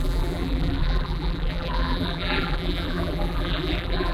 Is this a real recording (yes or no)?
no